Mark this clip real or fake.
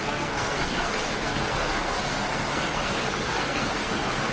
fake